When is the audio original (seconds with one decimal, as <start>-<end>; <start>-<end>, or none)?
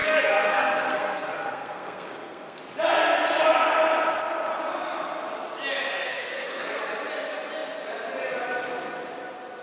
2.6-6.1; 6.8-9.6